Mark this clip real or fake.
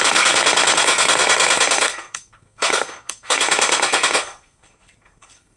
fake